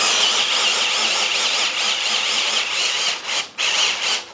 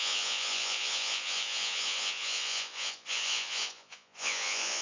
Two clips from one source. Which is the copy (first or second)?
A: second